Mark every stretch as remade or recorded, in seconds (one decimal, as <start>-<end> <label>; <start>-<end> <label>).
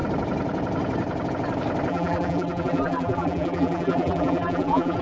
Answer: 0.0-1.9 recorded; 1.9-5.0 remade